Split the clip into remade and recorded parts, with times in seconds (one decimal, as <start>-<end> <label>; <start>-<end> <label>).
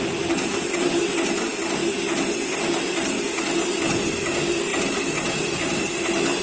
0.0-6.4 recorded